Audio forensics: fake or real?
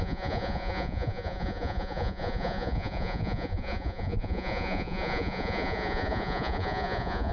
fake